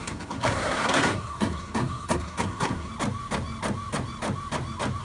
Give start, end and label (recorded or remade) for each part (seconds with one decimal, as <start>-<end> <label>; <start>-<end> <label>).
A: 0.0-2.9 remade; 2.9-5.0 recorded